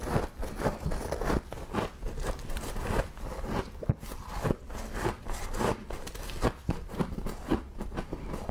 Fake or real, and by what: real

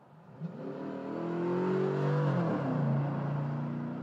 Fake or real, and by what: real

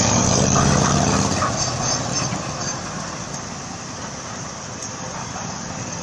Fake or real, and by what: real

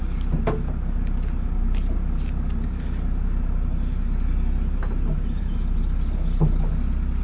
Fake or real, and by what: real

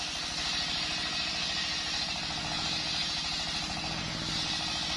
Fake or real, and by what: real